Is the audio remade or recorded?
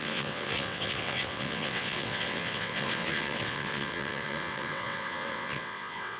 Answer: remade